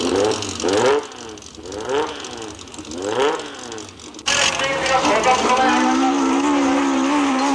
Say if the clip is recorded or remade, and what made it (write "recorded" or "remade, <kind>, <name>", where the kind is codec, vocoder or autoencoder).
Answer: recorded